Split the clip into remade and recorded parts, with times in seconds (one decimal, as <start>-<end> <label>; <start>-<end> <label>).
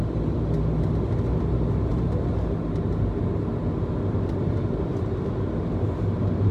0.0-6.5 recorded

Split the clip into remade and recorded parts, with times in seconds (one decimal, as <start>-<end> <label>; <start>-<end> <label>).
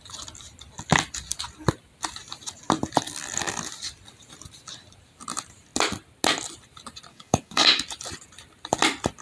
0.0-7.1 recorded; 7.1-7.8 remade; 7.8-9.2 recorded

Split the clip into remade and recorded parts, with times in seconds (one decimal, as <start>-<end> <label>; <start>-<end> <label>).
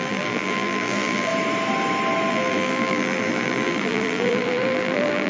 0.0-1.3 remade; 1.3-2.3 recorded; 2.3-5.3 remade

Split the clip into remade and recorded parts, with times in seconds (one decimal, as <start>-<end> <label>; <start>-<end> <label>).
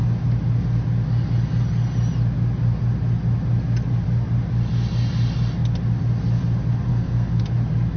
0.0-6.9 recorded; 6.9-7.4 remade; 7.4-8.0 recorded